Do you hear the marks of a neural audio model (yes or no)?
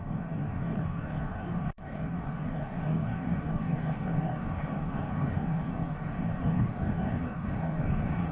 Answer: yes